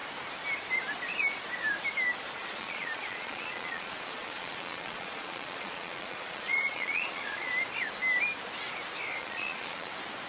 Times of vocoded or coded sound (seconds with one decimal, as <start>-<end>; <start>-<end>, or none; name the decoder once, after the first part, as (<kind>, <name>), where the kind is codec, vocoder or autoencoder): 2.4-7.5 (vocoder, Vocos); 9.2-9.9